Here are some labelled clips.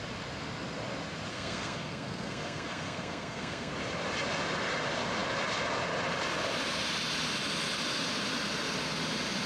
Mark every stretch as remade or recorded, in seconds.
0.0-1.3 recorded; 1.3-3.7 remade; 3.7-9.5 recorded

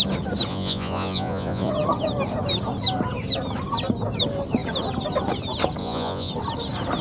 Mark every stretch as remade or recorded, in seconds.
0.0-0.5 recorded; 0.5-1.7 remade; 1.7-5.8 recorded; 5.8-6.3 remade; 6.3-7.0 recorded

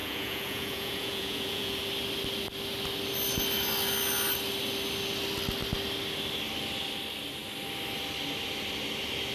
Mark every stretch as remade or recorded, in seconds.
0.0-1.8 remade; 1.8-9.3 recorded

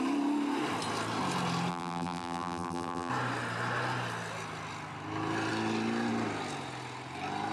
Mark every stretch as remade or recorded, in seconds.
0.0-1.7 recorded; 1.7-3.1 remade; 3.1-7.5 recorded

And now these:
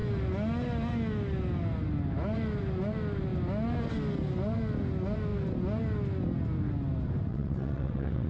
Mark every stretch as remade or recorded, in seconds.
0.0-7.3 recorded; 7.3-8.3 remade

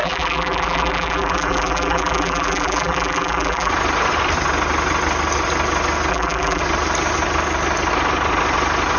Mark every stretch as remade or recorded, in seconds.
0.0-3.7 remade; 3.7-6.1 recorded; 6.1-6.6 remade; 6.6-9.0 recorded

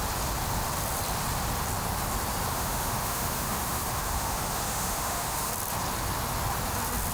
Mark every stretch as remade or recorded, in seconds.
0.0-2.5 recorded; 2.5-5.5 remade; 5.5-7.1 recorded

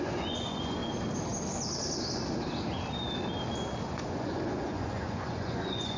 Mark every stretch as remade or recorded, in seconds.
0.0-0.8 remade; 0.8-3.8 recorded; 3.8-6.0 remade